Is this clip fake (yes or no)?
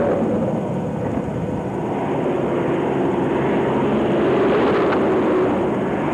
no